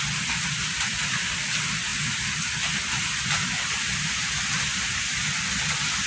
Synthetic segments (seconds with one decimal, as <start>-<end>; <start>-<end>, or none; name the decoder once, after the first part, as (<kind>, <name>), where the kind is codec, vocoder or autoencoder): none